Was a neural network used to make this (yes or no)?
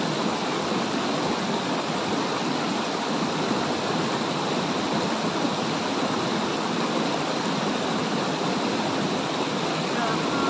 no